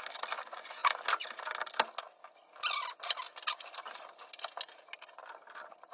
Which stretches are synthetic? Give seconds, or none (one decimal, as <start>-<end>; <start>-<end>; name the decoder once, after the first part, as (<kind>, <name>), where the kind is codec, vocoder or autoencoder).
none